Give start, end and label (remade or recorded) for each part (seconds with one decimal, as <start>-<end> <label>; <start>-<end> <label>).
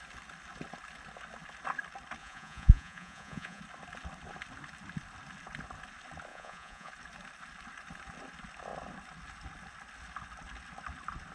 0.0-2.2 recorded; 2.2-3.6 remade; 3.6-6.3 recorded; 6.3-6.9 remade; 6.9-11.3 recorded